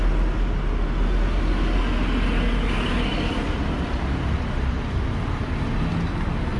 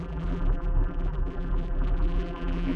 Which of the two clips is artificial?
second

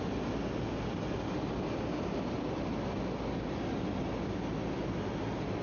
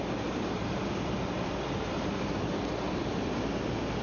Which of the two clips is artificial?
second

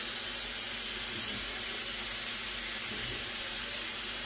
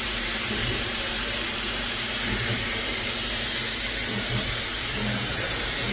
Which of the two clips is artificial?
second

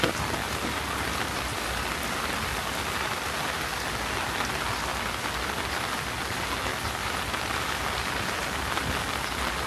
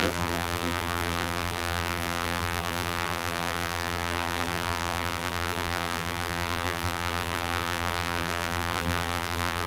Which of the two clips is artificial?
second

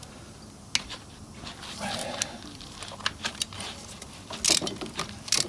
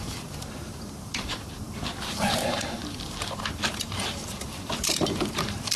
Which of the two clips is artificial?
second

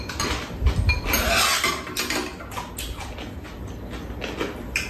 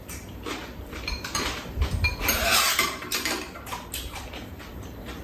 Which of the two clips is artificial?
second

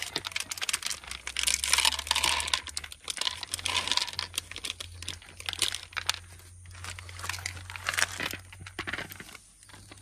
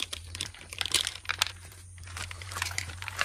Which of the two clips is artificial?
second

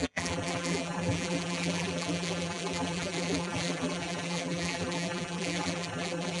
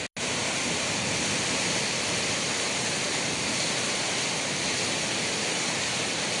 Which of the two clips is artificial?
first